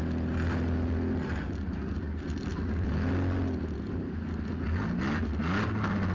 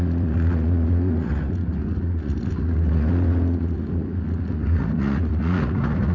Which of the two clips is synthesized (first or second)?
second